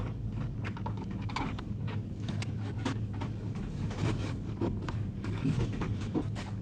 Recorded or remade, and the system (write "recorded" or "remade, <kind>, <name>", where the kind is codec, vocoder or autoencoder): remade, codec, DAC